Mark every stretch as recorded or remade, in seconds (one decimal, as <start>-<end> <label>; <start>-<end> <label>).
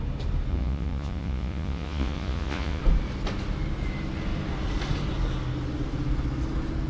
0.0-0.5 recorded; 0.5-2.8 remade; 2.8-6.9 recorded